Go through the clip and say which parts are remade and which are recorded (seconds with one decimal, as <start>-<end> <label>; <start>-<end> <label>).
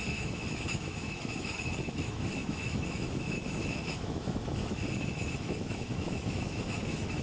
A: 0.0-7.2 remade